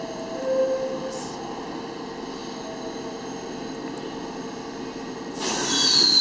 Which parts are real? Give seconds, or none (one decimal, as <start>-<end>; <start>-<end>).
0.0-6.2